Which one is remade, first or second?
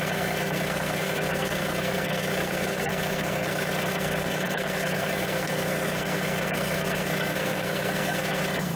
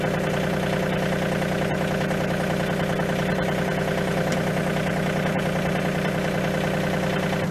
first